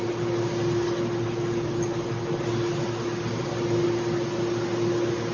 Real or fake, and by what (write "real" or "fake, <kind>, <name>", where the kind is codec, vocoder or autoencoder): real